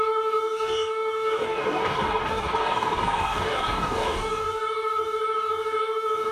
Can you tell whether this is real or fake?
fake